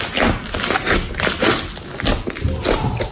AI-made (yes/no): no